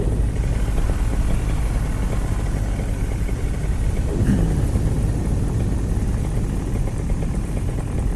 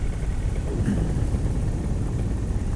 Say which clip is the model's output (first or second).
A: second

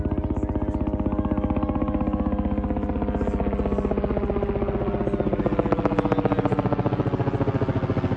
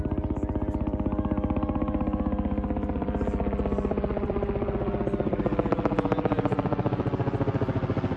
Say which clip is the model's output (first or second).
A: second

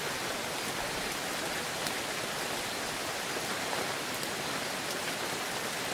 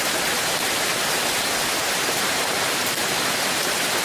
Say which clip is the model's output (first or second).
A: second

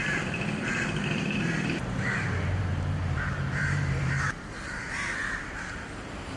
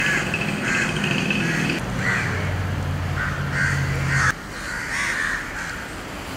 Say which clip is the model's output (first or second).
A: first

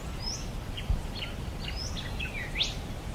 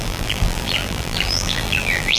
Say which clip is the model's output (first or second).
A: second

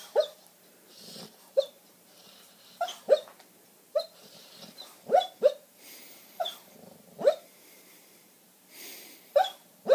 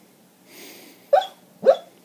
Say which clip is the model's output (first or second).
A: first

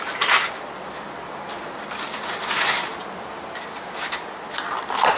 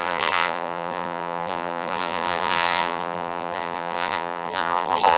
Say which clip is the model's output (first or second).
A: second